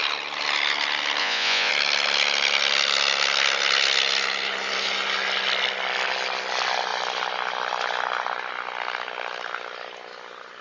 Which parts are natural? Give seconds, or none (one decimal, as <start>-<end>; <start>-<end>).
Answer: 0.0-1.2; 1.7-10.6